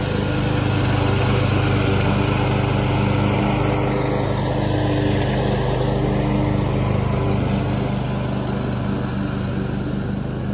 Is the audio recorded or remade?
recorded